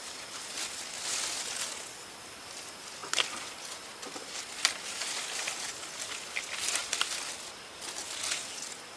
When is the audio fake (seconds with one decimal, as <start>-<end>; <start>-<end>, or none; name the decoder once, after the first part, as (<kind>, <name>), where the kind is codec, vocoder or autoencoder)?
none